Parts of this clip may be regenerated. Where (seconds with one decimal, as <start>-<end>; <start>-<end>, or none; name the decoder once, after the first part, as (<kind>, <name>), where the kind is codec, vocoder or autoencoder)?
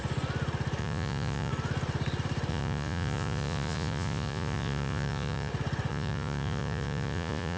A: 0.8-1.5 (vocoder, Vocos); 2.5-5.5; 5.9-7.6